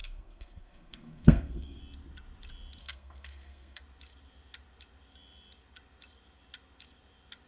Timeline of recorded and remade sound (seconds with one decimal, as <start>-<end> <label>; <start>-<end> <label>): 0.0-1.8 remade; 1.8-2.8 recorded; 2.8-3.8 remade; 3.8-7.5 recorded